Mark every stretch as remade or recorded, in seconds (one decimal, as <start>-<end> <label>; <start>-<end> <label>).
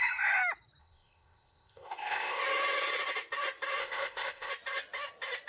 0.0-0.8 recorded; 0.8-2.4 remade; 2.4-3.8 recorded; 3.8-4.5 remade; 4.5-5.5 recorded